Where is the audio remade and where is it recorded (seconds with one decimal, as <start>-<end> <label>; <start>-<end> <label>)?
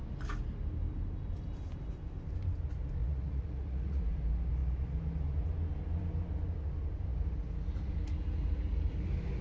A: 0.0-3.0 recorded; 3.0-4.0 remade; 4.0-9.4 recorded